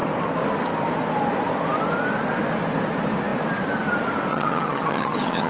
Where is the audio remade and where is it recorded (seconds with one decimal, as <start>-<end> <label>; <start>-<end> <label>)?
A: 0.0-4.3 recorded; 4.3-5.5 remade